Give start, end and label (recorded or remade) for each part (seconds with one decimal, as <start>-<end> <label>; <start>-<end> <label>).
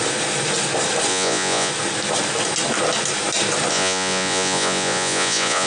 0.0-1.1 recorded; 1.1-1.7 remade; 1.7-3.7 recorded; 3.7-5.7 remade